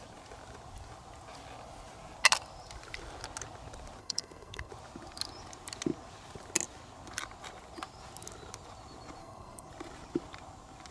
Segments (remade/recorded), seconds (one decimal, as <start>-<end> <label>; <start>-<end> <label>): 0.0-4.0 recorded; 4.0-4.7 remade; 4.7-9.2 recorded; 9.2-9.7 remade; 9.7-10.9 recorded